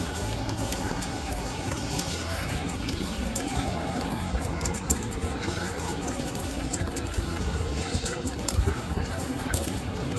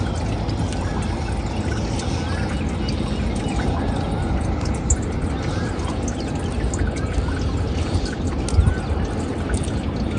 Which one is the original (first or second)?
second